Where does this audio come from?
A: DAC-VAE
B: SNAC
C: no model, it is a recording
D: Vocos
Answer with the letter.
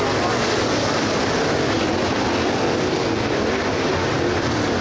C